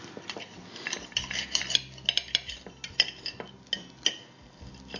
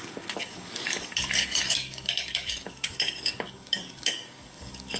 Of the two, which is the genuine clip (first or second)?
first